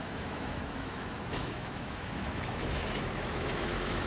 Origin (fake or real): fake